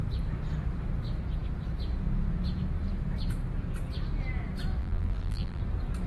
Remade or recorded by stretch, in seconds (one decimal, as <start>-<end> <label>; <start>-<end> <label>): 0.0-4.8 recorded; 4.8-5.6 remade; 5.6-6.1 recorded